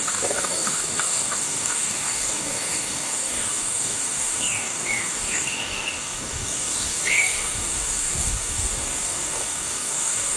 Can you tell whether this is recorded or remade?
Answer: remade